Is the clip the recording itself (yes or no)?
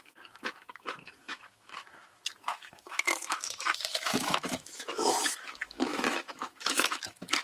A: no